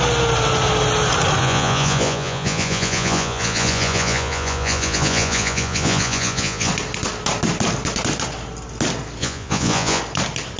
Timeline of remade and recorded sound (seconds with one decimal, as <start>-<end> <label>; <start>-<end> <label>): 0.0-1.4 recorded; 1.4-6.7 remade; 6.7-9.2 recorded; 9.2-10.0 remade; 10.0-10.6 recorded